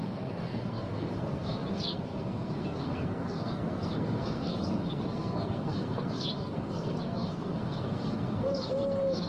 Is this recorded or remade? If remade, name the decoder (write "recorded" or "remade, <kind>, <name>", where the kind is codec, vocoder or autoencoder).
remade, codec, SNAC